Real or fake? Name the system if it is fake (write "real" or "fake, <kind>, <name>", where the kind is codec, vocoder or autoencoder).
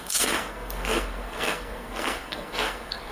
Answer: fake, codec, SNAC